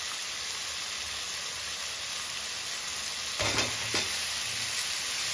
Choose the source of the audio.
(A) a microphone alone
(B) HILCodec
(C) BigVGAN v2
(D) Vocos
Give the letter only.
A